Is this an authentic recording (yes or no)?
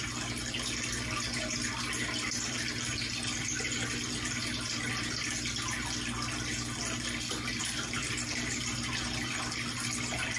yes